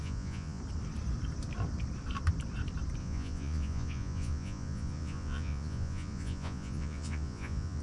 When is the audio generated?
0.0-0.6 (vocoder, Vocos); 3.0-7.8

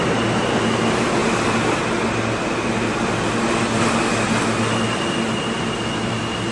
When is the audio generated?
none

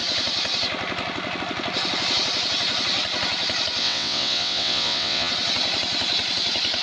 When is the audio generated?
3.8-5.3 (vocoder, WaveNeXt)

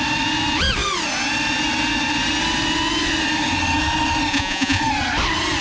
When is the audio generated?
4.3-4.8 (vocoder, Vocos)

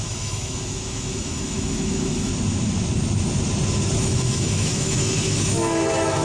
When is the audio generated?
0.0-2.3 (autoencoder, DAC-VAE); 4.0-6.2